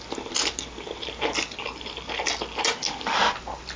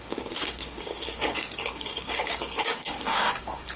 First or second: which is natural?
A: first